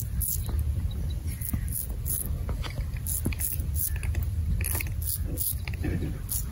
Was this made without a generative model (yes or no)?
yes